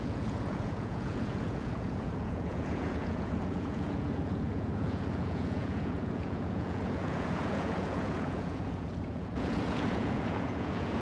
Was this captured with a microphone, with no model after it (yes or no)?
no